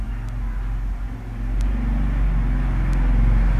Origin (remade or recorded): recorded